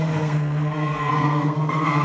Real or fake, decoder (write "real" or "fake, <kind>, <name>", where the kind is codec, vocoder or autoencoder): fake, codec, SNAC